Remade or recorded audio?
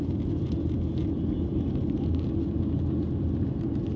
recorded